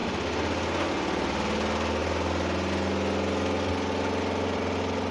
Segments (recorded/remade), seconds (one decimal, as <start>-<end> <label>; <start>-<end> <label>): 0.0-5.1 recorded